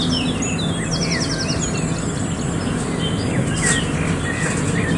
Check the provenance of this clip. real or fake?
real